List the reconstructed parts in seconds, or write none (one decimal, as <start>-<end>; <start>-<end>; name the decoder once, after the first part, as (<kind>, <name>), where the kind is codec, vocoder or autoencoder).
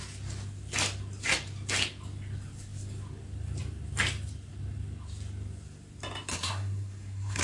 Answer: 6.3-7.4 (codec, SNAC)